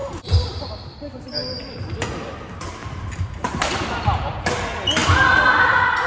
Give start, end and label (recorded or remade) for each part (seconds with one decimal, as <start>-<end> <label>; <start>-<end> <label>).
0.0-1.2 remade; 1.2-2.8 recorded; 2.8-4.4 remade; 4.4-6.1 recorded